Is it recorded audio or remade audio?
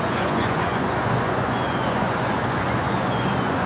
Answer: remade